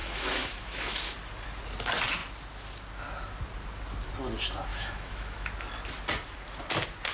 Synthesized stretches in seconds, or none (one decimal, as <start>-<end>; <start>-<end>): 0.0-1.0; 4.7-5.5